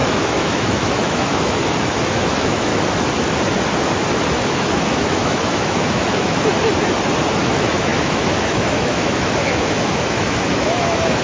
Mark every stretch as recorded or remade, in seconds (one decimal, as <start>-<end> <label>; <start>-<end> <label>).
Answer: 0.0-2.7 remade; 2.7-4.3 recorded; 4.3-6.5 remade; 6.5-7.4 recorded; 7.4-11.2 remade